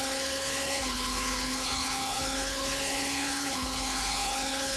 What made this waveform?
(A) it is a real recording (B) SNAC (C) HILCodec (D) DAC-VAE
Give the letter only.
C